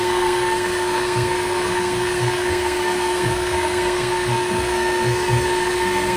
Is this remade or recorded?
remade